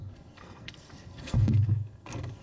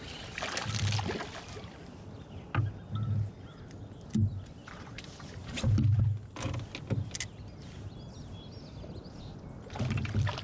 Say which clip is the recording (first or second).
second